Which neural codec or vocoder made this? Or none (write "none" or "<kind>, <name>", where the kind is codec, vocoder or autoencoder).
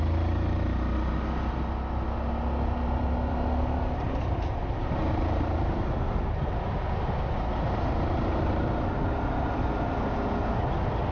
none